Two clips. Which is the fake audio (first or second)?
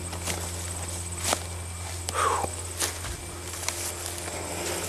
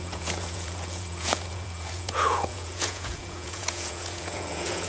second